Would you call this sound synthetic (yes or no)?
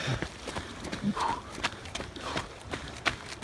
yes